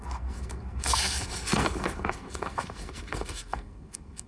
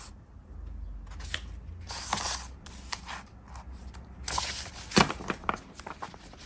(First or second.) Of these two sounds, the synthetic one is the first